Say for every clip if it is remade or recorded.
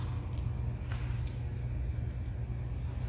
recorded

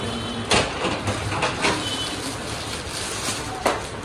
recorded